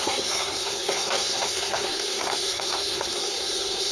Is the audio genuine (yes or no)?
no